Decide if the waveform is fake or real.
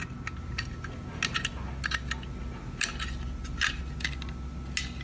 real